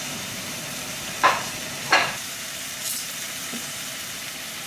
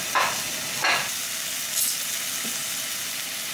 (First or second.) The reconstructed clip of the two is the first